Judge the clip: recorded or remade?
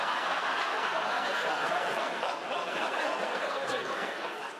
remade